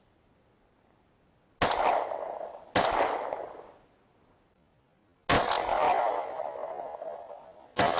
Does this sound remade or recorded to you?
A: recorded